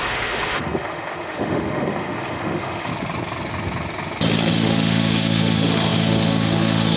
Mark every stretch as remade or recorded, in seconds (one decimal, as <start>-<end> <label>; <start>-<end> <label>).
0.0-2.9 remade; 2.9-4.5 recorded; 4.5-7.0 remade